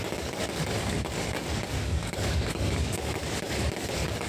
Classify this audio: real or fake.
fake